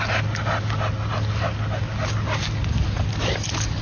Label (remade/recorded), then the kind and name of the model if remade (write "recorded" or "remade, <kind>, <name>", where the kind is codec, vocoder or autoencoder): recorded